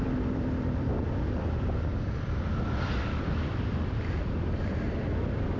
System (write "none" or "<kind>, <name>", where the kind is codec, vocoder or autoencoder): vocoder, BigVGAN v2